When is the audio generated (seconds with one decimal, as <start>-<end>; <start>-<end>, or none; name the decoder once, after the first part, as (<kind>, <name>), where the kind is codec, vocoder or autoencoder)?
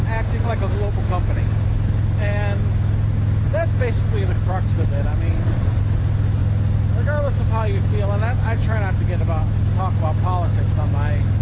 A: 5.3-5.8 (vocoder, WaveNeXt)